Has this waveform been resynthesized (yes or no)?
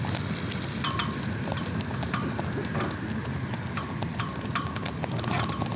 no